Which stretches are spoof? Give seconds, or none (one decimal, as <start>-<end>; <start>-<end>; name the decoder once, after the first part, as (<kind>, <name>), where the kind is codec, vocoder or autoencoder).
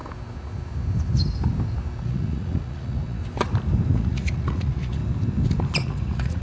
2.0-3.2 (vocoder, Vocos); 3.9-5.0; 5.8-6.4